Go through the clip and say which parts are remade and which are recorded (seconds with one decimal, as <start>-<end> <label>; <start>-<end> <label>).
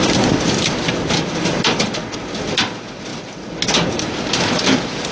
0.0-5.1 recorded